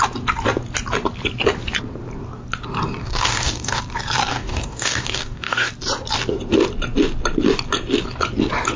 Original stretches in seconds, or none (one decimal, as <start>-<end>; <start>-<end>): 0.0-3.0; 3.8-4.3; 5.7-8.8

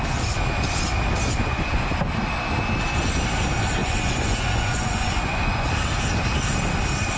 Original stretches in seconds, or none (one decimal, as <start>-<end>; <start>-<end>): 0.0-1.4; 2.0-3.8; 5.7-7.2

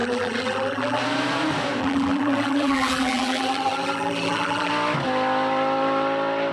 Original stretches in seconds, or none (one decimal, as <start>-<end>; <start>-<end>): 1.0-1.8; 4.7-6.5

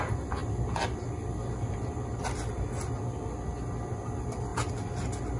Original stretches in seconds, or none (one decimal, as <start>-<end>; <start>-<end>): 0.0-5.4

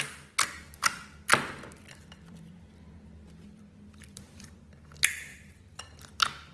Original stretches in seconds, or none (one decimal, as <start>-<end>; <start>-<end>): 0.0-1.3; 4.7-5.3; 6.0-6.5

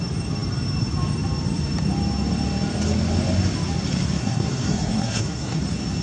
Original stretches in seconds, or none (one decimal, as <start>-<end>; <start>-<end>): 0.0-4.2; 5.6-6.0